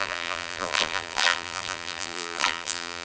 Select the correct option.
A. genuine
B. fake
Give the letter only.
B